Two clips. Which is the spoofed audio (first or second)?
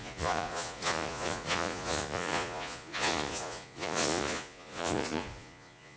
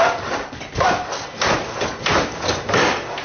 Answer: first